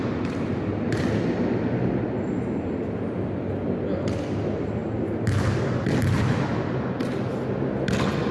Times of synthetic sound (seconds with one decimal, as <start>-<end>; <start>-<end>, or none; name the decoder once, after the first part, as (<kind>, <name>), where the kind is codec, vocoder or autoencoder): none